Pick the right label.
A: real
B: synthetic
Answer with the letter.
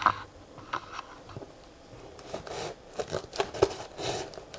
A